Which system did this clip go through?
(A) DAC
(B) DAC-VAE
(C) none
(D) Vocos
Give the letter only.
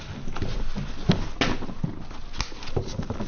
C